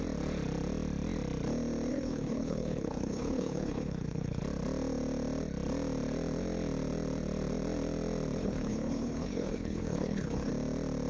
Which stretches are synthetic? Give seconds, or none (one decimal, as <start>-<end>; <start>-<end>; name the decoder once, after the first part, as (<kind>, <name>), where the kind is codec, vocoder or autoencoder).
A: 1.9-4.4 (codec, HILCodec); 8.4-10.5